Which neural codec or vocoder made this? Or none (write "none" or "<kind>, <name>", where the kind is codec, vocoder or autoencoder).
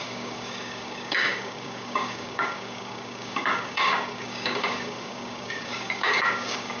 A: codec, DAC